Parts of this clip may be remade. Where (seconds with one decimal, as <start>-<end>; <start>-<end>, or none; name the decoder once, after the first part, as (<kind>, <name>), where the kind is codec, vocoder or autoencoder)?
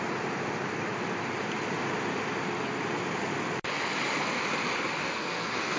5.0-5.8 (codec, SNAC)